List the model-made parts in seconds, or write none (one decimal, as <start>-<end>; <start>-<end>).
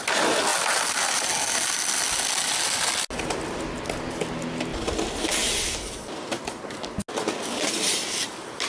4.7-5.3